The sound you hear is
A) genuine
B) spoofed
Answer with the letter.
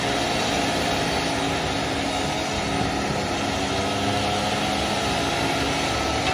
A